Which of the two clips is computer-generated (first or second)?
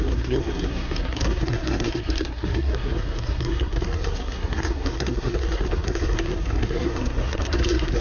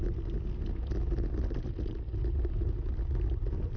first